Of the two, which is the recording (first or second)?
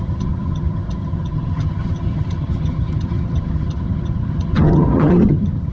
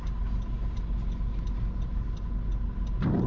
second